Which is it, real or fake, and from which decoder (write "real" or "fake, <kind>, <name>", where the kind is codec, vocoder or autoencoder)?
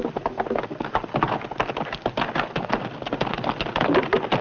real